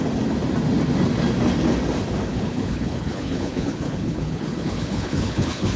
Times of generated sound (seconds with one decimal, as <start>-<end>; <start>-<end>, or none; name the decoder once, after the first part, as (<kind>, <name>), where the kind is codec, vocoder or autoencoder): 2.3-5.8 (codec, HILCodec)